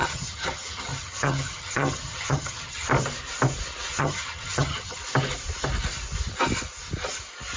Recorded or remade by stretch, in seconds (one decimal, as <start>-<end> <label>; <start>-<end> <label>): 0.0-2.9 remade; 2.9-4.0 recorded; 4.0-5.0 remade; 5.0-7.6 recorded